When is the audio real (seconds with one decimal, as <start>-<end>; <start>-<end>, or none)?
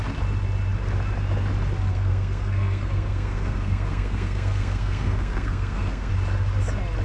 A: 0.0-1.9; 6.1-7.0